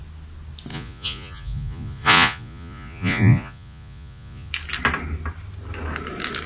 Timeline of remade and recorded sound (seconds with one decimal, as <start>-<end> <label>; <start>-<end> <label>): 0.0-0.7 recorded; 0.7-4.5 remade; 4.5-6.5 recorded